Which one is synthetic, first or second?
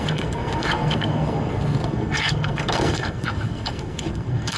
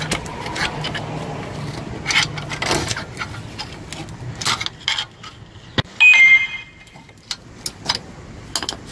first